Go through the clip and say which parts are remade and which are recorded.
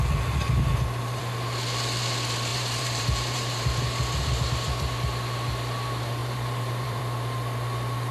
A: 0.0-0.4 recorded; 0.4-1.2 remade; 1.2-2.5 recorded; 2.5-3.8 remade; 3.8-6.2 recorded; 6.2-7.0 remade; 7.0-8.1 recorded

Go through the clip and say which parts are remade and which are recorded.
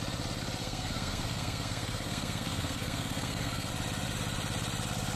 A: 0.0-0.6 recorded; 0.6-3.7 remade; 3.7-5.2 recorded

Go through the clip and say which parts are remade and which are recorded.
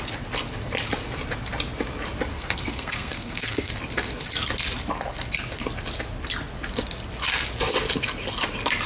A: 0.0-2.3 recorded; 2.3-3.7 remade; 3.7-8.9 recorded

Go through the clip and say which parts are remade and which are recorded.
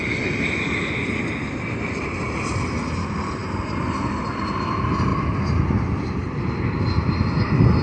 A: 0.0-7.8 recorded